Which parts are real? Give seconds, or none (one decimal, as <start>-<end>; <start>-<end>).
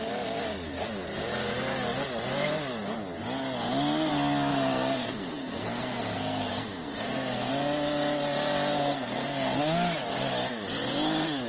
0.0-4.5; 7.5-8.7; 9.6-11.5